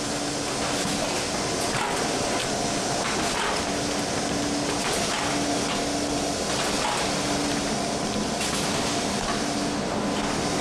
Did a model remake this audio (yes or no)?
no